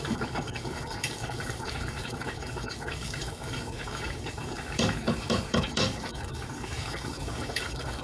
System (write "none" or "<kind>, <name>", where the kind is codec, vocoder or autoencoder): codec, DAC